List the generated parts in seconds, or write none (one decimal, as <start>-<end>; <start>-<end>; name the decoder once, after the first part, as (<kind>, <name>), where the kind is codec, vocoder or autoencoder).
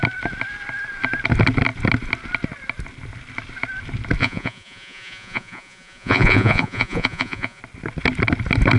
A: 4.2-7.6 (vocoder, Vocos)